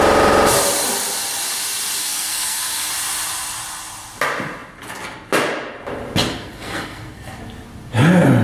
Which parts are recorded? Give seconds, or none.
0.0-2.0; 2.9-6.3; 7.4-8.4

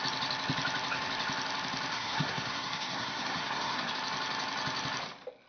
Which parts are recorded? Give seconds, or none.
0.0-1.9; 3.9-5.5

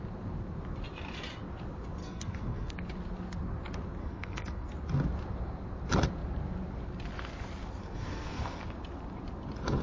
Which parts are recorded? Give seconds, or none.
0.0-2.0; 2.7-4.0; 4.7-7.8; 8.6-9.8